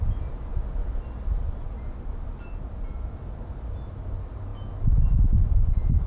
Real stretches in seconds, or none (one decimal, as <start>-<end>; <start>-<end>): 0.0-6.1